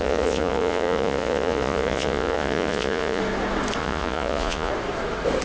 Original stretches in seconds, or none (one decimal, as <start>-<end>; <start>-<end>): 3.2-3.8; 4.7-5.4